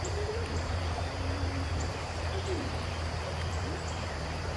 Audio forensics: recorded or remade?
remade